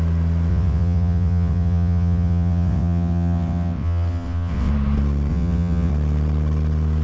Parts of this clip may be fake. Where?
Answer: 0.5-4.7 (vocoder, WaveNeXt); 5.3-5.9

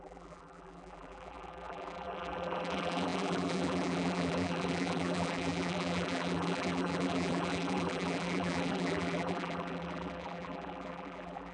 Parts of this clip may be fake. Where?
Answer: 0.0-11.5 (vocoder, BigVGAN v2)

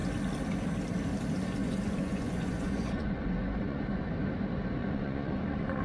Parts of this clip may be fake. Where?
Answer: 1.6-4.1 (vocoder, Vocos); 4.8-5.8

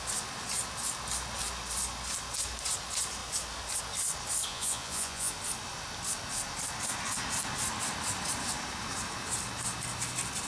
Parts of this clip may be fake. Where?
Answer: 4.5-5.3 (vocoder, Vocos)

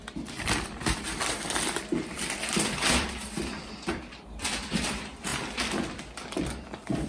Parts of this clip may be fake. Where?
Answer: 0.0-5.3 (vocoder, BigVGAN v2)

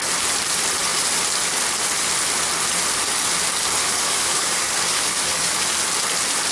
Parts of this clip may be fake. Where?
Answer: 3.8-5.6 (codec, DAC)

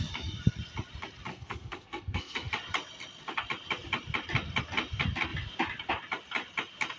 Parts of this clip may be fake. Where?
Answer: 1.3-2.5 (codec, SNAC)